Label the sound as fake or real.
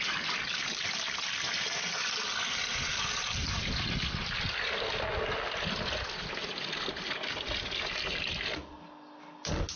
real